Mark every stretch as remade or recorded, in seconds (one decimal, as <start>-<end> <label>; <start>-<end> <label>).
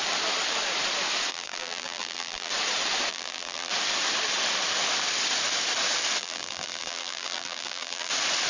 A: 0.0-1.3 recorded; 1.3-2.5 remade; 2.5-3.1 recorded; 3.1-3.7 remade; 3.7-6.2 recorded; 6.2-8.1 remade; 8.1-8.5 recorded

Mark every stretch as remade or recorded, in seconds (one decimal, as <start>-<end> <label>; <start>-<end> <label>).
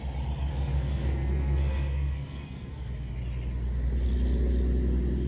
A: 0.0-0.5 recorded; 0.5-3.1 remade; 3.1-5.3 recorded